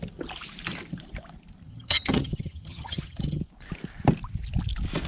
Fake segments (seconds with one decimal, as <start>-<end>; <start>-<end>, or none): 1.6-3.4